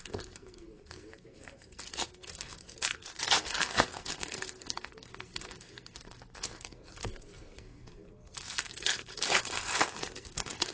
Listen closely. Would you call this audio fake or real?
fake